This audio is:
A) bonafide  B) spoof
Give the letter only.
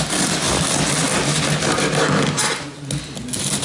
A